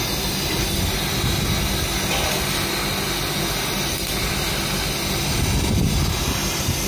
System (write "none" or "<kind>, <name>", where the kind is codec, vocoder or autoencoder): none